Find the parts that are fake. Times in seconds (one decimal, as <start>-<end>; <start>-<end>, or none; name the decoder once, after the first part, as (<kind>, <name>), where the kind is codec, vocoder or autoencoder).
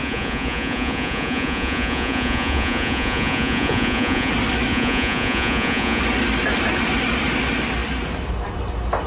0.0-4.3 (vocoder, Vocos); 4.7-6.0